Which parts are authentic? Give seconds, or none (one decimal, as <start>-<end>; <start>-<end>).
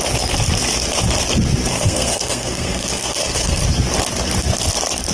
0.0-1.7; 3.6-5.1